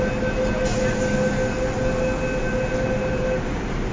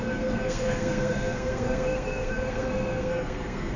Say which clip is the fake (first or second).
second